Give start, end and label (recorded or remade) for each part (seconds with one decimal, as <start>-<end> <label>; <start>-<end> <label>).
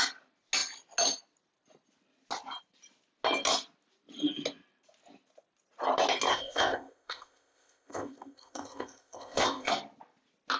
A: 0.0-6.3 recorded; 6.3-9.7 remade; 9.7-10.6 recorded